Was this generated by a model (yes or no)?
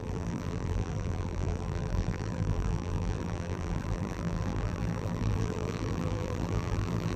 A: yes